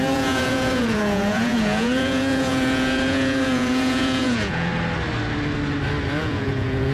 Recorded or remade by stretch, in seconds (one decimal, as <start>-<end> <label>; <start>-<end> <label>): 0.0-4.7 remade; 4.7-6.1 recorded; 6.1-6.9 remade